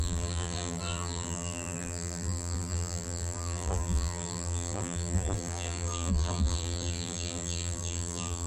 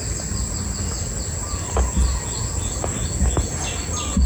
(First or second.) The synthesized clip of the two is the first